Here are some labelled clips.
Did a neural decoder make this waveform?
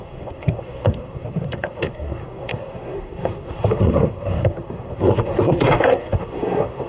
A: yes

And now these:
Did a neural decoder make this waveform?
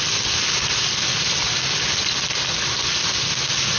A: no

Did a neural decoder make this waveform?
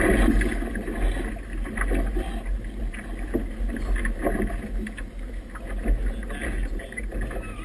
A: no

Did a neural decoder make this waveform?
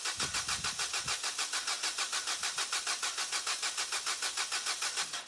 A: no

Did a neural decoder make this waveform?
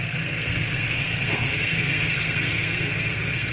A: yes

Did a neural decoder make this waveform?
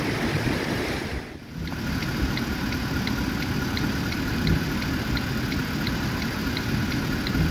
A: no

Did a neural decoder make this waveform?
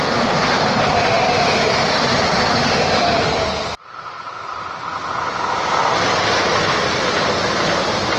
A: no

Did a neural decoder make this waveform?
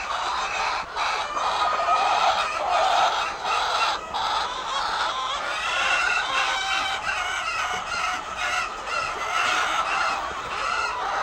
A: no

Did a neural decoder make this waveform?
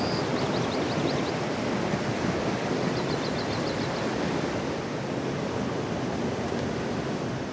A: no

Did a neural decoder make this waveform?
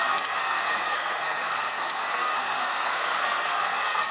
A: yes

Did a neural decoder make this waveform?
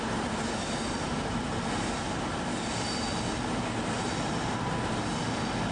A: no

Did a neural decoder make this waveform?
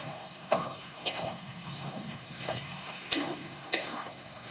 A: yes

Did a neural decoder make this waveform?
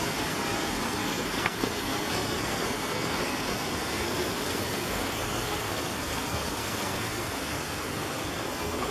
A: yes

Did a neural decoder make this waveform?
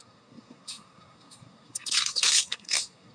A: yes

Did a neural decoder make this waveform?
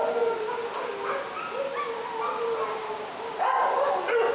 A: no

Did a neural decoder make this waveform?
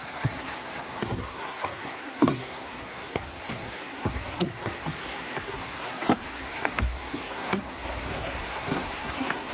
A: yes